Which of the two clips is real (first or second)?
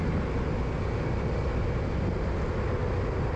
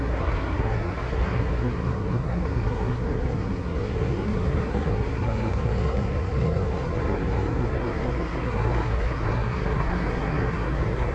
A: first